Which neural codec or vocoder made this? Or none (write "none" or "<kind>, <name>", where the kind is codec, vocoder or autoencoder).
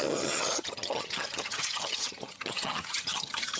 vocoder, HiFi-GAN